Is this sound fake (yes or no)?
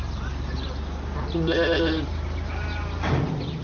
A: no